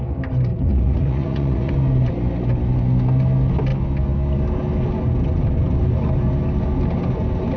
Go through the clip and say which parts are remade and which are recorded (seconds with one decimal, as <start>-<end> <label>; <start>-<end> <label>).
0.0-0.5 recorded; 0.5-1.7 remade; 1.7-7.6 recorded